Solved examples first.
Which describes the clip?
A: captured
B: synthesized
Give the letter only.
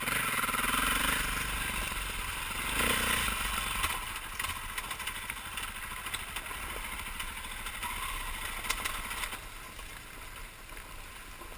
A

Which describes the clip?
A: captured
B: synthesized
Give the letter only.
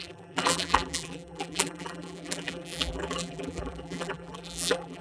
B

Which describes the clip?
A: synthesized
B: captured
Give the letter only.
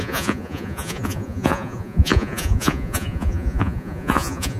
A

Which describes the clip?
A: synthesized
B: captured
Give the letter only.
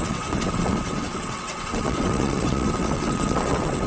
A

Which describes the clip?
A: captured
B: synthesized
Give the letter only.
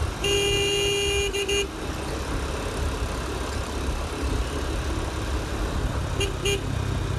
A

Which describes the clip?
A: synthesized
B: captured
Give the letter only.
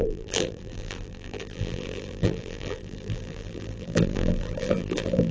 A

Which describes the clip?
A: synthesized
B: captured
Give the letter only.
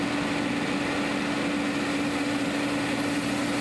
B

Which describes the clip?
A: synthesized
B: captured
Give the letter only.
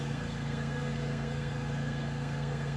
A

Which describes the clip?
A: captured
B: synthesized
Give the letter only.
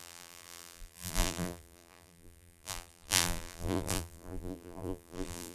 B